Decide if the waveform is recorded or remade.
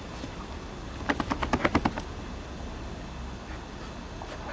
recorded